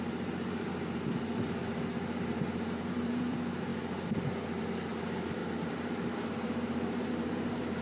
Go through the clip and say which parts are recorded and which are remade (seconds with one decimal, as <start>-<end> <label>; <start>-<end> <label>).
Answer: 0.0-0.7 remade; 0.7-2.5 recorded; 2.5-3.7 remade; 3.7-5.0 recorded; 5.0-7.8 remade